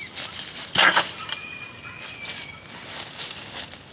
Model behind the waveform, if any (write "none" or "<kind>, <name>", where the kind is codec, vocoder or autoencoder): none